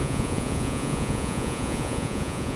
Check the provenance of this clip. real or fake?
fake